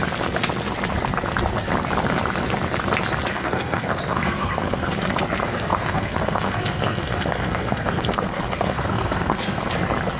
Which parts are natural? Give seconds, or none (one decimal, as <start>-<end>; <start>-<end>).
0.0-3.3; 4.9-5.4; 9.7-10.2